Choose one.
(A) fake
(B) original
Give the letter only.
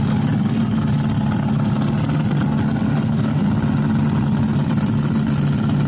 B